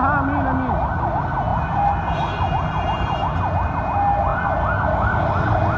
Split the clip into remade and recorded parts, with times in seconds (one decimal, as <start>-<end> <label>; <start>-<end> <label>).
0.0-5.8 recorded